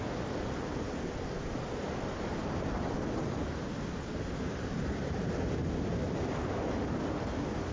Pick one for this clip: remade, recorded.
recorded